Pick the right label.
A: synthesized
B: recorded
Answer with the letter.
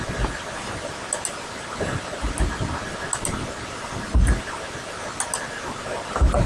B